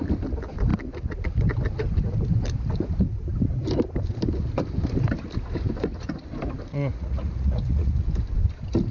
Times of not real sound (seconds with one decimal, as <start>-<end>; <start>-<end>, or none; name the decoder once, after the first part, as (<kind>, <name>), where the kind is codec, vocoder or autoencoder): 6.7-8.0 (vocoder, Vocos)

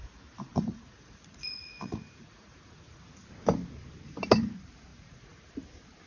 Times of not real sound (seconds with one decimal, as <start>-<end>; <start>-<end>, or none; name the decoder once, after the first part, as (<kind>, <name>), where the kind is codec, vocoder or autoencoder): 0.5-3.0 (vocoder, Vocos); 4.9-5.5

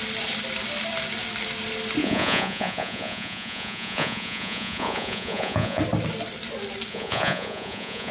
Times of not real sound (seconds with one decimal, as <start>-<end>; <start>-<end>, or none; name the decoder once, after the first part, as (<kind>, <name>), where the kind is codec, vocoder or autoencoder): 2.0-5.8 (vocoder, Vocos); 6.9-8.1

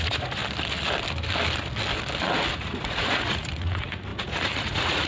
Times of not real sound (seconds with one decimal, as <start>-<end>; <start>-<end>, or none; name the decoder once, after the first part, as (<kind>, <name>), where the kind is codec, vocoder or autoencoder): 0.0-0.4 (vocoder, Vocos); 2.5-5.1

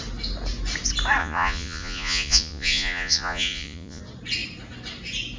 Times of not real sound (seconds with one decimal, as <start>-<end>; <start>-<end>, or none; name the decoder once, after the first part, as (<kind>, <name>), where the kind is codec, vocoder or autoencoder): 1.2-4.0 (vocoder, Vocos)

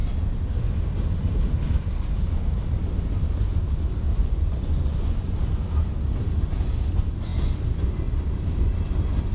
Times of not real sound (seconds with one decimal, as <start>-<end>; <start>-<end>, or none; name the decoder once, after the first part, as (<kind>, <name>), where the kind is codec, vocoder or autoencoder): 4.1-5.6 (vocoder, Vocos)

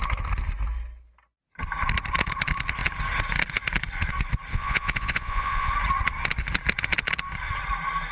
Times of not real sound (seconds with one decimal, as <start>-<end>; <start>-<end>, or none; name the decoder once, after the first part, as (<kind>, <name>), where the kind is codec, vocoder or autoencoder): 4.5-5.7 (vocoder, Vocos)

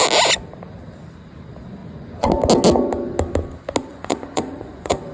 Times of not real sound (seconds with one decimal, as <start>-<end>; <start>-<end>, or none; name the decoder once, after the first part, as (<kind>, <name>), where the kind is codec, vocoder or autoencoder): 1.8-2.3 (vocoder, Vocos); 3.9-5.1